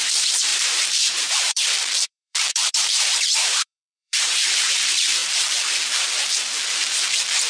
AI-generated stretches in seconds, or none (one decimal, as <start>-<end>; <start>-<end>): 0.0-5.2